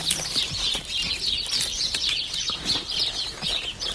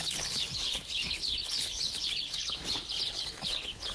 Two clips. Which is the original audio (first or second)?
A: first